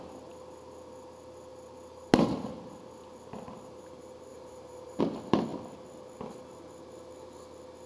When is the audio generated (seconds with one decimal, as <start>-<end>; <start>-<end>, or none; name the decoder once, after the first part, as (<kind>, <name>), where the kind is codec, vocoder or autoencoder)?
4.3-5.0 (vocoder, BigVGAN v2)